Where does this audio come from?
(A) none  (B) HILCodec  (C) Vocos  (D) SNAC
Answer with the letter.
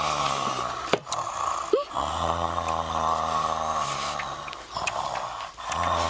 A